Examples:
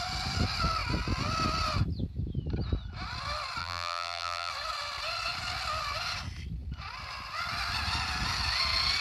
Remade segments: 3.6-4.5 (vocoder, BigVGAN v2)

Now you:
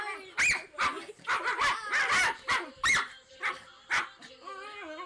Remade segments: 2.9-4.3 (vocoder, BigVGAN v2)